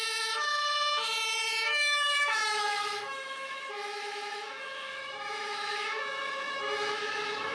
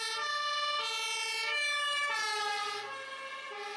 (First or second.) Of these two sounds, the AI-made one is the first